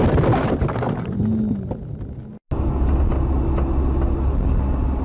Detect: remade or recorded recorded